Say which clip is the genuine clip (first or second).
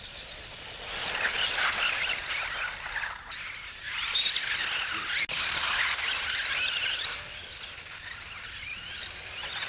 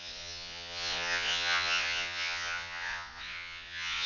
first